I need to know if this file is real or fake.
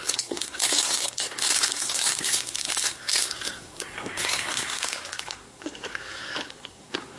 fake